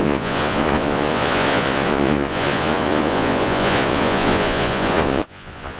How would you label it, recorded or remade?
remade